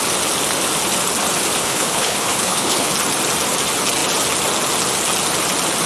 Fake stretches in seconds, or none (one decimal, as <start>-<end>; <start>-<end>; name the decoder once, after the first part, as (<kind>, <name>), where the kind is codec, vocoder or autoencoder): 1.6-2.9 (codec, HILCodec)